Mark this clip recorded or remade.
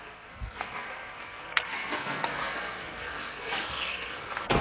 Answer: remade